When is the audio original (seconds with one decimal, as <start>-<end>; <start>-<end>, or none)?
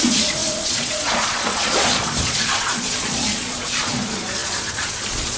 none